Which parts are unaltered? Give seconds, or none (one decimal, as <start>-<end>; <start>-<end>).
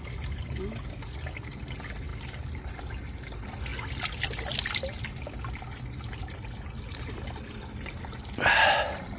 0.0-9.2